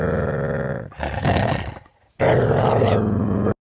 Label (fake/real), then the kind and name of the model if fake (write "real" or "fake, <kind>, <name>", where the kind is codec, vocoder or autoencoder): real